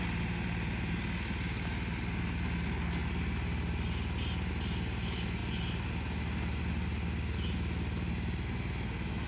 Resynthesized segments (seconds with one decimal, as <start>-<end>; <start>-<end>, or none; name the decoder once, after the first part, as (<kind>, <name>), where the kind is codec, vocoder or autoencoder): none